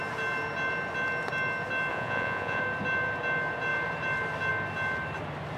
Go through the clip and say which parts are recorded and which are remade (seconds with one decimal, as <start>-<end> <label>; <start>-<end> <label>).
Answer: 0.0-1.9 recorded; 1.9-2.6 remade; 2.6-5.6 recorded